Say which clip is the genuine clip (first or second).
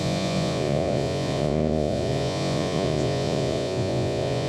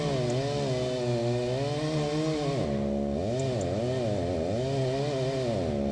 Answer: second